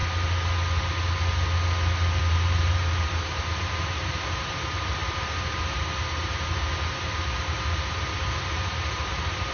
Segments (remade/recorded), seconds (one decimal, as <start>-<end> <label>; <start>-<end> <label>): 0.0-2.2 recorded; 2.2-9.5 remade